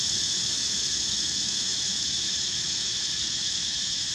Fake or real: fake